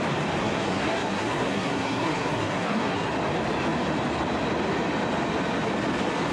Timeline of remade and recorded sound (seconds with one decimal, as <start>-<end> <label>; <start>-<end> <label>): 0.0-0.4 recorded; 0.4-3.1 remade; 3.1-6.3 recorded